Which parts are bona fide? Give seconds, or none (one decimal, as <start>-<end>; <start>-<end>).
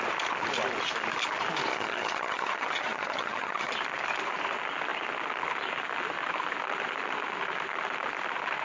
0.0-1.7; 3.7-8.6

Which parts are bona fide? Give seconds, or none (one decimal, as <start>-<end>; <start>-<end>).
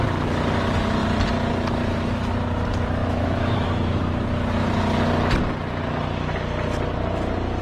0.0-3.0; 4.0-7.6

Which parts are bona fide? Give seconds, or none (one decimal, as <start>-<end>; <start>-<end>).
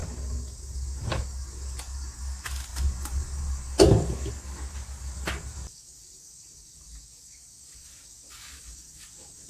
none